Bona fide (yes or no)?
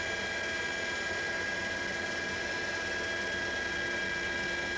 yes